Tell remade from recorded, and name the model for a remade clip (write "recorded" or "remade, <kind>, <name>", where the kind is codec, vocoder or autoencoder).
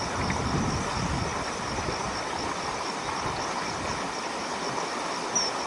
recorded